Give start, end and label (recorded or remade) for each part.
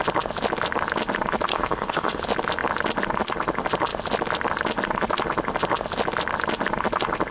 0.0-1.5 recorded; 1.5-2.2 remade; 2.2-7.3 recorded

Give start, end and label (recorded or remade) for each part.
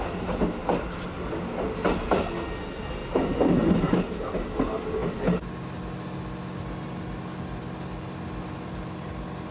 0.0-9.5 recorded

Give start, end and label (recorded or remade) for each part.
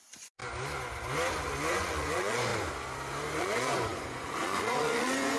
0.0-0.4 remade; 0.4-1.7 recorded; 1.7-2.5 remade; 2.5-3.4 recorded; 3.4-5.4 remade